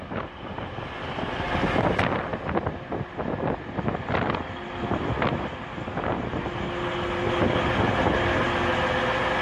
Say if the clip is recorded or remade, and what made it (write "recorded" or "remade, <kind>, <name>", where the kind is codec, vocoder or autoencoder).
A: recorded